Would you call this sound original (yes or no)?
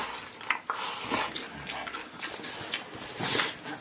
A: yes